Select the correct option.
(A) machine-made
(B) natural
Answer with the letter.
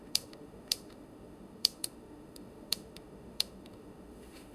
A